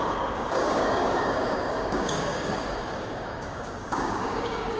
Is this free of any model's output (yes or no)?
no